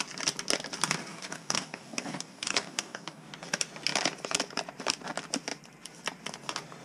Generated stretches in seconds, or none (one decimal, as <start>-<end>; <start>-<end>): 1.1-3.3